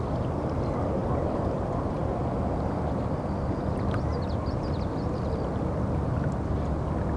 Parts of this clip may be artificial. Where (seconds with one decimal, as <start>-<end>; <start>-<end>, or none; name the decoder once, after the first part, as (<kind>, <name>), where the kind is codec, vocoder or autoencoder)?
1.0-1.5 (vocoder, BigVGAN v2)

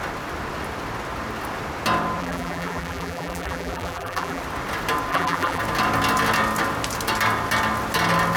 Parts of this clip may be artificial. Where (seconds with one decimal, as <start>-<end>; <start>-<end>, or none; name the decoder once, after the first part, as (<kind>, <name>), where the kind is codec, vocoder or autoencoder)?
2.2-4.4 (vocoder, BigVGAN v2); 5.1-5.6

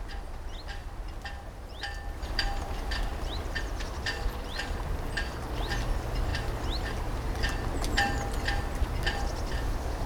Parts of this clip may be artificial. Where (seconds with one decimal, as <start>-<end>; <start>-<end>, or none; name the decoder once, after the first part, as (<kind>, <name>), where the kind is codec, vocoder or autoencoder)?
3.1-3.7 (vocoder, BigVGAN v2)

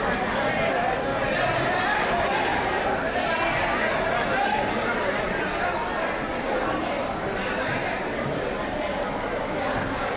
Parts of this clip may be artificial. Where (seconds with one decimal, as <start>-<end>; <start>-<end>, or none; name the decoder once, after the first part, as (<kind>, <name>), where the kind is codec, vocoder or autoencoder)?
2.5-3.6 (vocoder, BigVGAN v2)

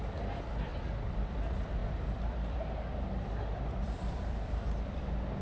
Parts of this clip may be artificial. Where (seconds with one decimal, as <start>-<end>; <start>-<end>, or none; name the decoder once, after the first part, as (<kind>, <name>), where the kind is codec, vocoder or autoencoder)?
0.0-0.7 (vocoder, BigVGAN v2); 1.3-5.4

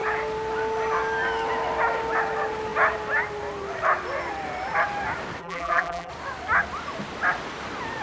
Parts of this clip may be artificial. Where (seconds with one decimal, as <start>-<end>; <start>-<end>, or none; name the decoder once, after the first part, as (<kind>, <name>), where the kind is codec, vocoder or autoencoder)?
5.4-6.1 (vocoder, BigVGAN v2)